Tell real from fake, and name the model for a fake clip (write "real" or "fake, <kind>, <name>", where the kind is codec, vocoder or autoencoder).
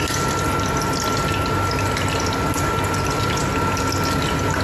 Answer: real